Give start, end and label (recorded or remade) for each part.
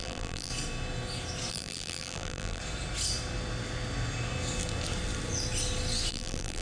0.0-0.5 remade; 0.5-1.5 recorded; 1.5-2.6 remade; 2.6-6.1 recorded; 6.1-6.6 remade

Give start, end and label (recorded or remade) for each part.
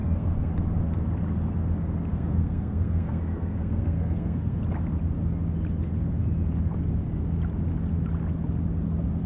0.0-0.5 remade; 0.5-2.1 recorded; 2.1-4.6 remade; 4.6-9.3 recorded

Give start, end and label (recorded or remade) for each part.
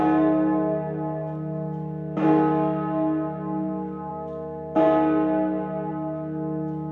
0.0-6.9 recorded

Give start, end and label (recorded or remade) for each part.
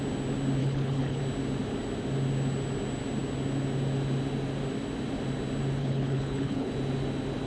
0.0-0.6 recorded; 0.6-1.2 remade; 1.2-5.8 recorded; 5.8-6.7 remade; 6.7-7.5 recorded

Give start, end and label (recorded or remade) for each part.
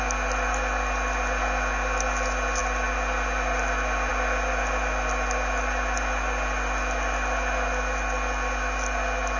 0.0-9.4 recorded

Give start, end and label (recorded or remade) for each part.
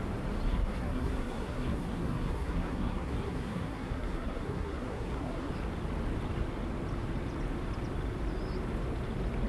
0.0-0.5 recorded; 0.5-5.5 remade; 5.5-9.5 recorded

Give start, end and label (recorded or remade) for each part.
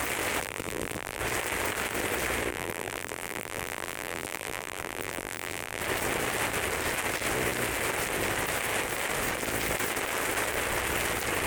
0.0-0.4 recorded; 0.4-1.2 remade; 1.2-2.5 recorded; 2.5-5.8 remade; 5.8-11.5 recorded